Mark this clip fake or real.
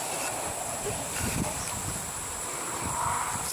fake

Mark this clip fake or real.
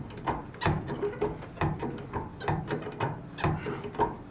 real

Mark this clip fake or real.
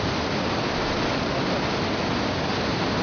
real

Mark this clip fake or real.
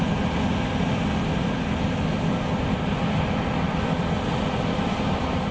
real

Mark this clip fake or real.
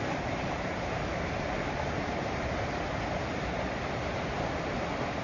fake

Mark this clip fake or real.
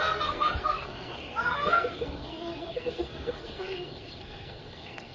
fake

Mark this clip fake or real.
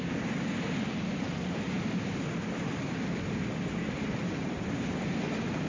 real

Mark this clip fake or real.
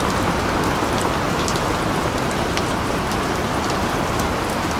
real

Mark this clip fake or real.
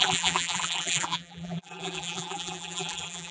fake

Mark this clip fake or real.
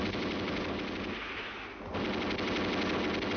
real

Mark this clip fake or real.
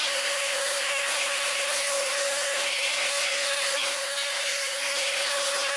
fake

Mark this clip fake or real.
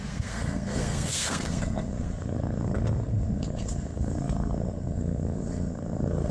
fake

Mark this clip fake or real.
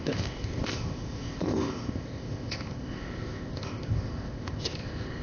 fake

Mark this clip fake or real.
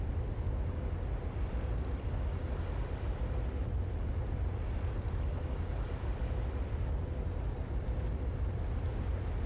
real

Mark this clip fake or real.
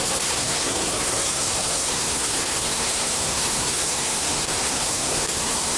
fake